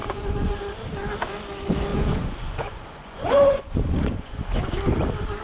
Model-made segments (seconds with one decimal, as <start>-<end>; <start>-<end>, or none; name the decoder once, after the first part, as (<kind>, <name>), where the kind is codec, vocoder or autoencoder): 0.0-0.6 (vocoder, Vocos); 1.9-4.8